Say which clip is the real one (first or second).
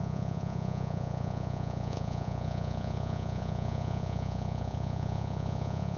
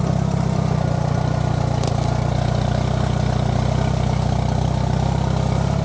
second